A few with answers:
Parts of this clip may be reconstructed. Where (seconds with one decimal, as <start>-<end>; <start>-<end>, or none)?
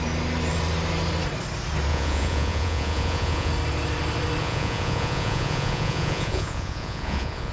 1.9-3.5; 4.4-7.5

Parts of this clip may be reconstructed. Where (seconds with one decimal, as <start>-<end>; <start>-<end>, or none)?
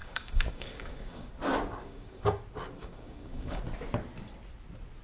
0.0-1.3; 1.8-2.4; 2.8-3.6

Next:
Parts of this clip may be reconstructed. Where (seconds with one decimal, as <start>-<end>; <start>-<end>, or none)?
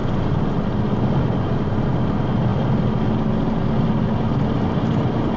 none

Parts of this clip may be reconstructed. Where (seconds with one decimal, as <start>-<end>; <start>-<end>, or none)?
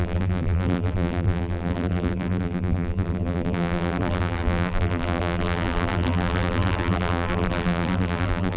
0.0-8.6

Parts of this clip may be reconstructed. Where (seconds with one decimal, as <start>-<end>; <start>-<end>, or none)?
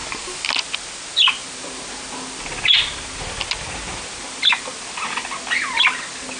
0.0-0.5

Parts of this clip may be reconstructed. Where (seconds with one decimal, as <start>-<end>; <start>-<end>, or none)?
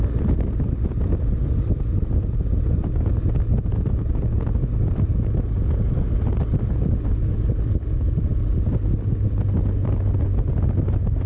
none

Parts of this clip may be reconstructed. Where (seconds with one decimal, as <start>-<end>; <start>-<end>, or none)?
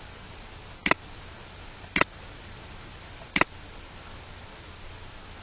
none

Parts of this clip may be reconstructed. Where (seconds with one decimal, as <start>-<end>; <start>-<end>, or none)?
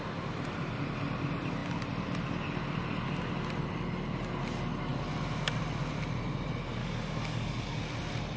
6.8-7.8